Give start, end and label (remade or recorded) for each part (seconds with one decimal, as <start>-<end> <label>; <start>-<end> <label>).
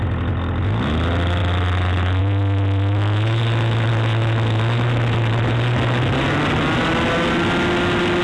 0.0-8.2 recorded